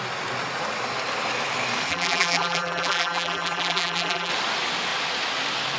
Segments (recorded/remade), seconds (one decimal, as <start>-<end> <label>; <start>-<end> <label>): 0.0-1.9 recorded; 1.9-4.3 remade; 4.3-5.8 recorded